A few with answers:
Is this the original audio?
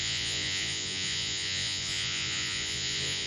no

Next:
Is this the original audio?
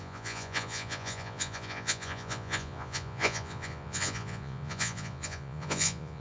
no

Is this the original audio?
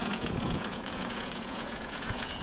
no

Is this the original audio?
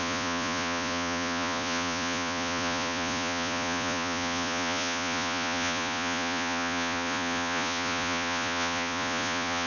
no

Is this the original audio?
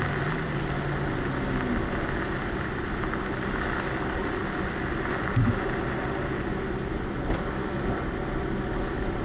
yes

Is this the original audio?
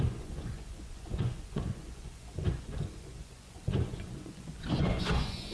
no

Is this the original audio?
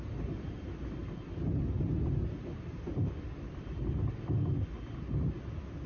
yes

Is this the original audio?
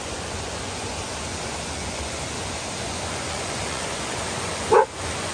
no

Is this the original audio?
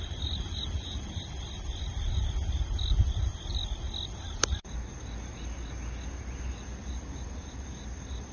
yes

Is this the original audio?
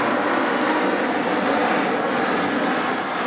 yes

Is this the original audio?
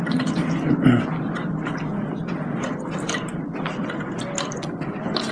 yes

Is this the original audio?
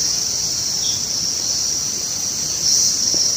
yes